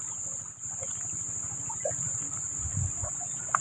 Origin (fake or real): real